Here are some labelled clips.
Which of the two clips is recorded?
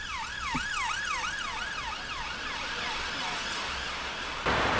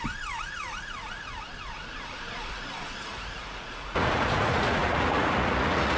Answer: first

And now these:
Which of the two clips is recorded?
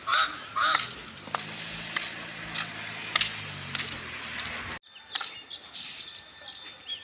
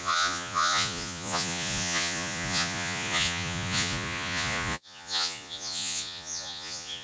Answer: first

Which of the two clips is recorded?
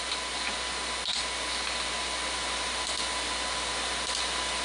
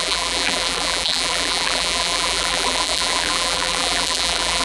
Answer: first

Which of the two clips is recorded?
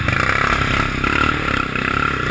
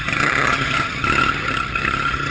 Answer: first